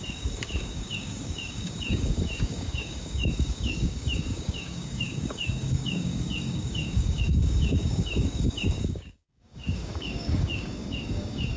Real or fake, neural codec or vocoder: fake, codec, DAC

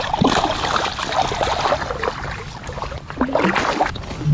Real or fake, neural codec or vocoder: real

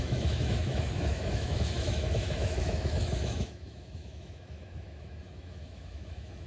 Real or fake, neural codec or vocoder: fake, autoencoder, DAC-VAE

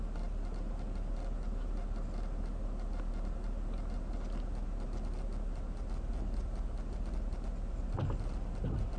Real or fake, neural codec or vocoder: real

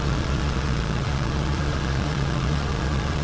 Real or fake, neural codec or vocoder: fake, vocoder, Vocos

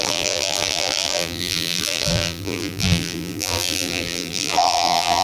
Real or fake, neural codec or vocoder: fake, vocoder, BigVGAN v2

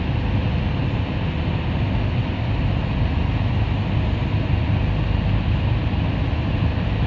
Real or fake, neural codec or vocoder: real